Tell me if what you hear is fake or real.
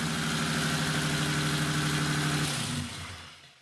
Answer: real